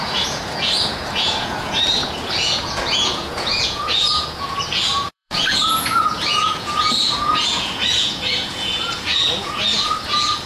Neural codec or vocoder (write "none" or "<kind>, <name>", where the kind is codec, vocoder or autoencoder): vocoder, Vocos